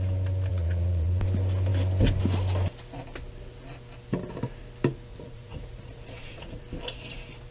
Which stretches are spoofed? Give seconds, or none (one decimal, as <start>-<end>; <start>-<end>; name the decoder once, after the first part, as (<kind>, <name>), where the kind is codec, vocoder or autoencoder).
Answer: 0.5-1.2 (vocoder, Vocos); 5.1-6.6